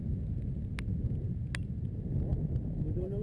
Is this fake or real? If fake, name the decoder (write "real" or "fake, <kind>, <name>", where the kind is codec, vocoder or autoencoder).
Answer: real